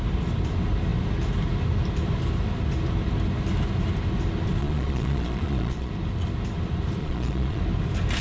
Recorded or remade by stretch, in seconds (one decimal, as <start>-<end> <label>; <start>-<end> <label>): 0.0-4.6 recorded; 4.6-5.9 remade; 5.9-7.0 recorded; 7.0-7.6 remade; 7.6-8.2 recorded